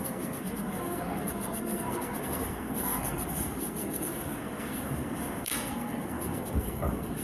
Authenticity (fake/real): fake